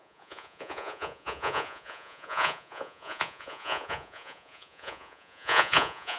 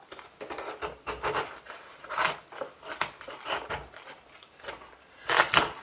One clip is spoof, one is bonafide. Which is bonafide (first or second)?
second